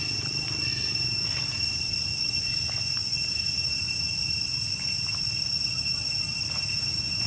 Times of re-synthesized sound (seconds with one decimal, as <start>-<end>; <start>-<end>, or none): none